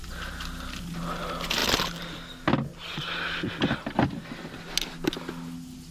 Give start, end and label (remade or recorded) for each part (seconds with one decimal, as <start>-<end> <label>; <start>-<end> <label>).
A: 0.0-5.9 recorded